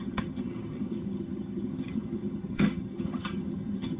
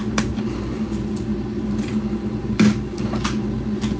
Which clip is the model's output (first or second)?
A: first